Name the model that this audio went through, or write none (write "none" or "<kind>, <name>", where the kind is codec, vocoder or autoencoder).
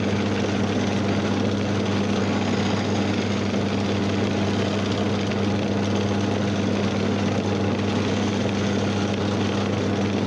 none